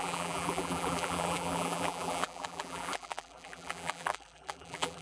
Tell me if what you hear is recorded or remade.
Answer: remade